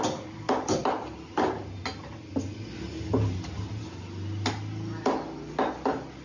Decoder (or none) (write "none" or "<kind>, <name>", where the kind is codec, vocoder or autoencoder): none